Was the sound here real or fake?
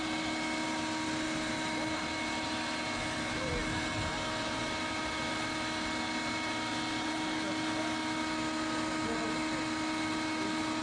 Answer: real